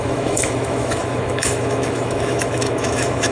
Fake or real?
fake